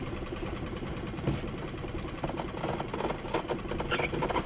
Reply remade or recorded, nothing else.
recorded